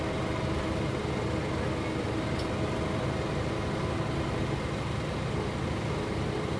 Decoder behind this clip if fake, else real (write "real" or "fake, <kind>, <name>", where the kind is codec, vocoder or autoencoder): real